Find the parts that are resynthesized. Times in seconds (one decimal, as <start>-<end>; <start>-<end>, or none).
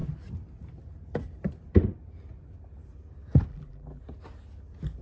3.5-4.0